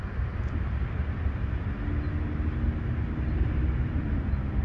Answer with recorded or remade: recorded